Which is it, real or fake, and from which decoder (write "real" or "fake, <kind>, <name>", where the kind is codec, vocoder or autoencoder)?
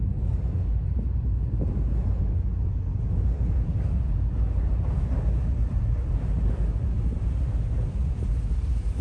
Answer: real